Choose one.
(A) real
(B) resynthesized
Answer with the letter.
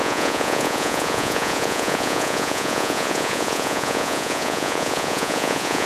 B